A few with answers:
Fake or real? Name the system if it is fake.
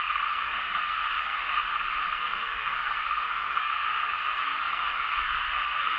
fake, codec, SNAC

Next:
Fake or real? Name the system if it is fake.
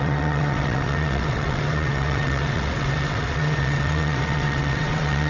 fake, vocoder, WaveNeXt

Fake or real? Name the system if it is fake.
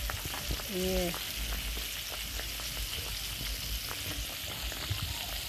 real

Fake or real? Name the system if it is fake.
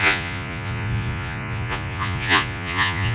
fake, vocoder, Vocos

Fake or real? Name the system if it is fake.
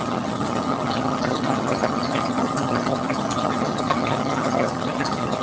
fake, vocoder, HiFi-GAN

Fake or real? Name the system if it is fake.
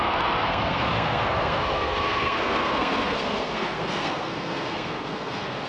fake, codec, SNAC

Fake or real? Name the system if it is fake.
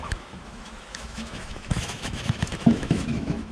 fake, autoencoder, DAC-VAE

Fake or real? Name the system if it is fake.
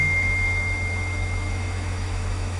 fake, autoencoder, DAC-VAE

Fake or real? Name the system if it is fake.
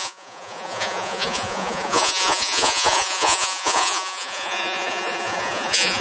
fake, vocoder, Vocos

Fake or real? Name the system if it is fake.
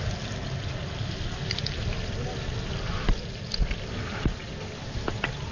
real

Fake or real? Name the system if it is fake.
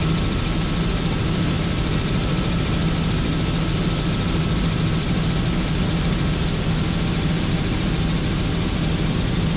real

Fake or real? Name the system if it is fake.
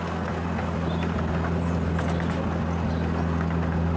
real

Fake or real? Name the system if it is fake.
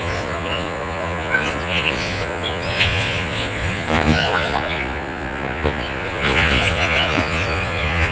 fake, vocoder, Vocos